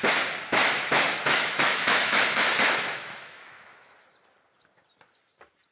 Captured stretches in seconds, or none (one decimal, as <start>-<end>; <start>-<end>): 0.0-0.6; 4.0-5.7